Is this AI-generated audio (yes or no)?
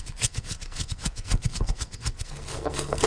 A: yes